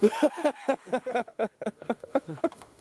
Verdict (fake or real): fake